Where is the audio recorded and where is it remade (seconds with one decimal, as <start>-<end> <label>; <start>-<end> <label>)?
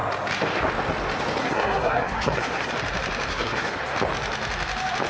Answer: 0.0-1.4 recorded; 1.4-2.7 remade; 2.7-3.3 recorded; 3.3-3.8 remade; 3.8-5.1 recorded